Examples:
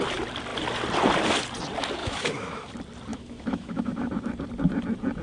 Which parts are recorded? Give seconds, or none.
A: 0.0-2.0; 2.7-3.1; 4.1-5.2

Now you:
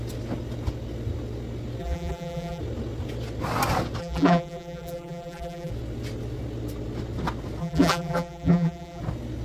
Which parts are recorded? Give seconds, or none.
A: 0.0-1.8; 2.6-4.0; 5.7-7.6; 9.0-9.4

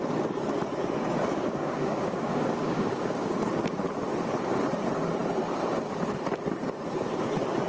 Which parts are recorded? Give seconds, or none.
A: 0.0-1.3; 3.3-7.7

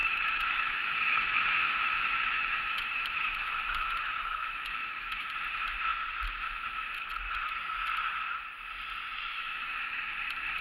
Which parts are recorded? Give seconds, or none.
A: 5.3-9.3; 10.1-10.6

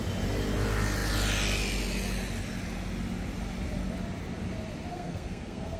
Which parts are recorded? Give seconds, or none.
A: 0.0-4.9

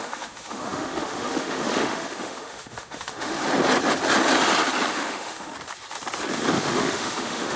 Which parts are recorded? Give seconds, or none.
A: 3.4-4.9; 5.5-6.5

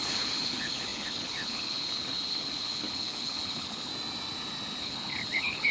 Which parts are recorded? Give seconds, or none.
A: 3.9-4.8

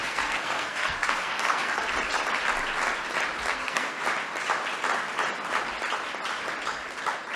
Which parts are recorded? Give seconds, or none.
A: 1.9-3.5; 4.0-7.4